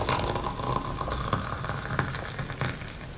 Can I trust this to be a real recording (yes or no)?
yes